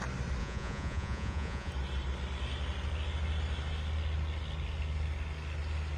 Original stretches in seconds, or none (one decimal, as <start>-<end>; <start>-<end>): 0.0-0.4; 1.7-6.0

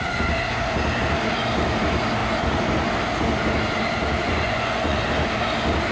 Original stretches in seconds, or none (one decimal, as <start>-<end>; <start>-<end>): 0.0-4.2; 5.0-5.9

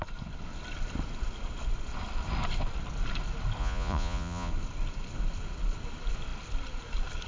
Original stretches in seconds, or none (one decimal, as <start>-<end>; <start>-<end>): 0.0-3.6; 4.5-7.3